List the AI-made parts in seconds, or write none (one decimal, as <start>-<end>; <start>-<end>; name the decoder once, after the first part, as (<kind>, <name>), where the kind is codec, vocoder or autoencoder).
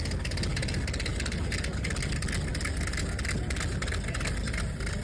none